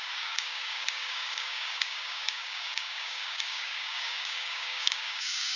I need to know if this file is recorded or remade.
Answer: remade